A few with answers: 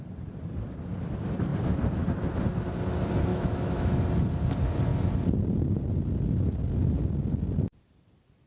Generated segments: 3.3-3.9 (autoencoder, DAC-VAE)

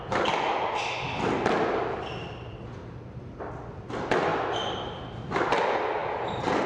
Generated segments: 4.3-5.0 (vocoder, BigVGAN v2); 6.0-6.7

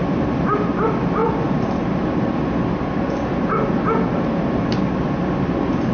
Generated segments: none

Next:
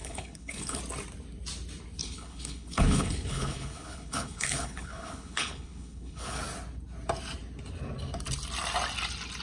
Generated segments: 0.0-0.8 (codec, HILCodec); 2.0-6.4

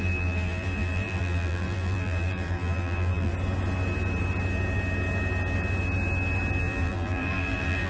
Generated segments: 0.0-3.3 (vocoder, BigVGAN v2); 6.6-7.9